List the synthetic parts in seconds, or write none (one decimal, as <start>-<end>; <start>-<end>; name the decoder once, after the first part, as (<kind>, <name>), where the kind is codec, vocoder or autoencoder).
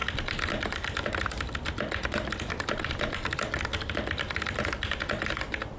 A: none